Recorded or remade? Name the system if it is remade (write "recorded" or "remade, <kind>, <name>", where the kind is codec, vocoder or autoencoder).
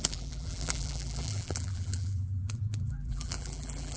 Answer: remade, vocoder, BigVGAN v2